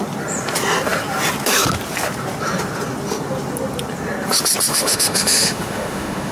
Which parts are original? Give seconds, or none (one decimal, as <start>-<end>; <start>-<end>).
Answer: 0.0-4.7